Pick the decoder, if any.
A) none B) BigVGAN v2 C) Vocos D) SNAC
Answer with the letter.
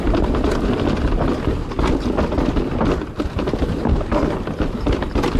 A